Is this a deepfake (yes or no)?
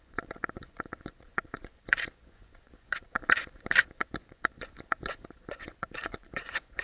yes